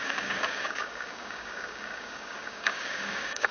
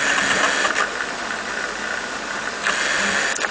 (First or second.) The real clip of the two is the second